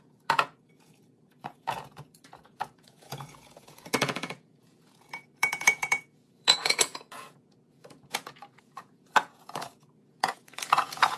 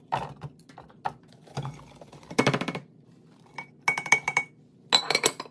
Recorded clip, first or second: second